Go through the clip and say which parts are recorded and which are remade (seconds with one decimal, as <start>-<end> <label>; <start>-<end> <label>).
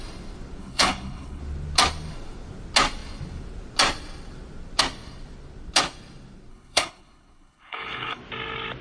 0.0-0.6 recorded; 0.6-1.4 remade; 1.4-6.5 recorded; 6.5-8.2 remade; 8.2-8.8 recorded